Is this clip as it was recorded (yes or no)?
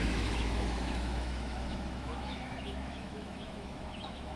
no